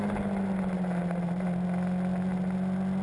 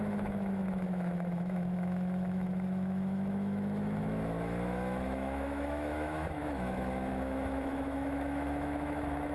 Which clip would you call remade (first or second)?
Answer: second